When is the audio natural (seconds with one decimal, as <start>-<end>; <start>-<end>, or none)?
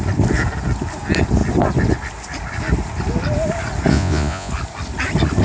0.0-3.9; 4.5-5.4